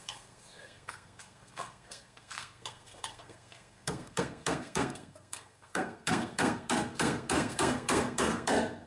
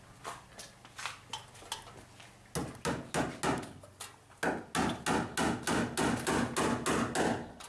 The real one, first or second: second